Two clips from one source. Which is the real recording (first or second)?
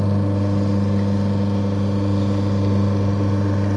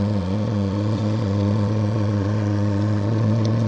first